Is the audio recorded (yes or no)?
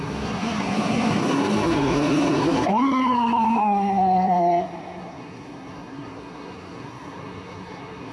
no